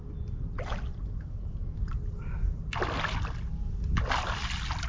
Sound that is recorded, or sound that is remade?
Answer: recorded